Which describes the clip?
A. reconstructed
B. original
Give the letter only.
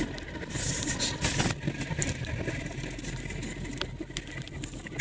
B